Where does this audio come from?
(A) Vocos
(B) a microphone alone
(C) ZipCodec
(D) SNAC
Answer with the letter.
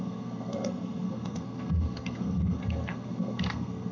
D